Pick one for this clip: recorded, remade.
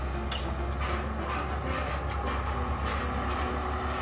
recorded